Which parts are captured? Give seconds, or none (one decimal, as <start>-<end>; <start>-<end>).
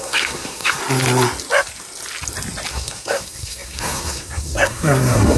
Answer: 0.8-2.7